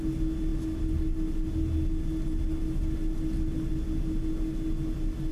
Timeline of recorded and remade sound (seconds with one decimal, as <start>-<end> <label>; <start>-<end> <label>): 0.0-5.3 recorded